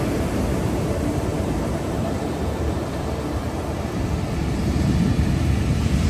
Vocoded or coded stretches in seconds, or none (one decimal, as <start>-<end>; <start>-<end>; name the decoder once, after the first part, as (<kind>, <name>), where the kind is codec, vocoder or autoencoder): 0.0-6.1 (vocoder, BigVGAN v2)